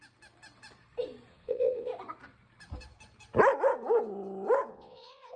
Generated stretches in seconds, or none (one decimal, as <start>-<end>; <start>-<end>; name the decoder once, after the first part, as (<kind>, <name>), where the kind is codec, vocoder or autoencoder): 1.3-1.9 (vocoder, Vocos); 4.7-5.4